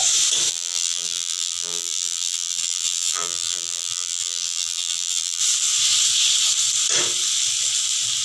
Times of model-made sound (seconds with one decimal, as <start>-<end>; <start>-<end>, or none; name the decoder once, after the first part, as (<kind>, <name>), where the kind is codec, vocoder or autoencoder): 0.5-5.4 (vocoder, BigVGAN v2)